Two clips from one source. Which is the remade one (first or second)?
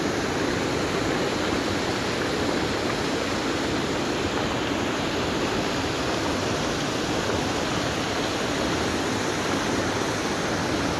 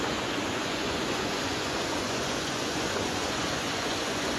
second